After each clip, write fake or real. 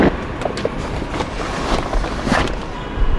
real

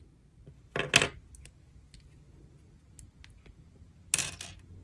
real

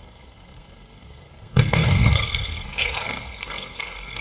fake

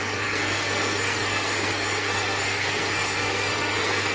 fake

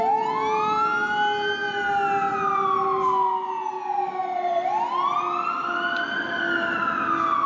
real